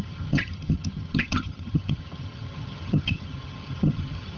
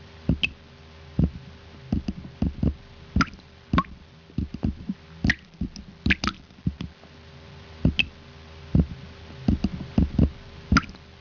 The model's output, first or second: first